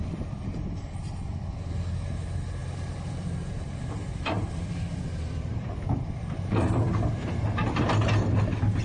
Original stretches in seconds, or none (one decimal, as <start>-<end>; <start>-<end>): 0.0-2.6; 7.1-8.8